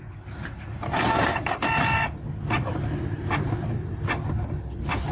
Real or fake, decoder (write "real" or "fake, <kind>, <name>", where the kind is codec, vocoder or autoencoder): fake, vocoder, BigVGAN v2